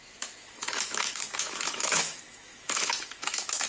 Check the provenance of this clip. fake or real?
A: fake